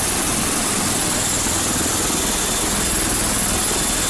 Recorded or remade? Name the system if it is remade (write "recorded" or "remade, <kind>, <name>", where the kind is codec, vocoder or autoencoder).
recorded